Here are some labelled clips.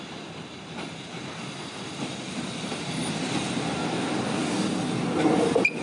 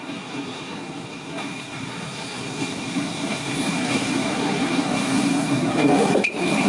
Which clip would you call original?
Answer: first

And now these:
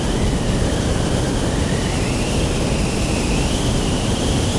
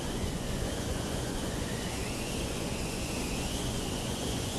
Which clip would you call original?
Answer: first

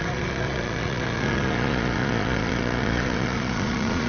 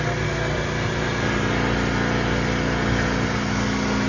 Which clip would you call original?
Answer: second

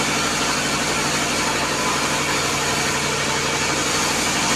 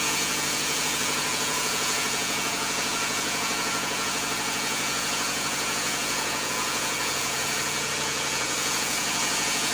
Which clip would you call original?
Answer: first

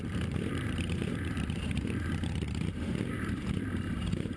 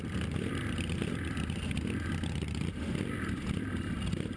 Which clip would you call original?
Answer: second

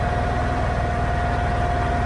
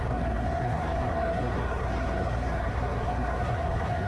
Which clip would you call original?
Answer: first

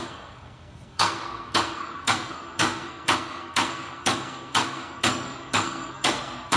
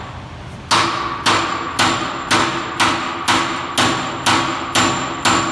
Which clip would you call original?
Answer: second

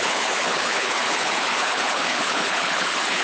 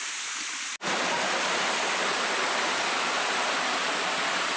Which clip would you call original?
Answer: second